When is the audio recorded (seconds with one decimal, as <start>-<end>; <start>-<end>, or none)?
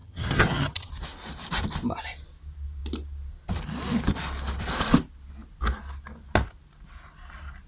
0.9-7.7